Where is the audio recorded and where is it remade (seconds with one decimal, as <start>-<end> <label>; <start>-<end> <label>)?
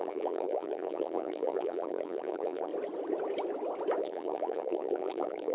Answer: 0.0-2.7 remade; 2.7-4.0 recorded; 4.0-5.5 remade